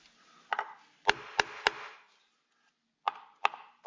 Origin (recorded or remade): recorded